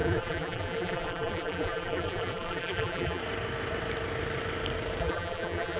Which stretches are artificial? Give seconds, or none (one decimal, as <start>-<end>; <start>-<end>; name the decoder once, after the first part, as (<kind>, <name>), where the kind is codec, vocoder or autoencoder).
0.0-3.2 (vocoder, BigVGAN v2); 5.0-5.8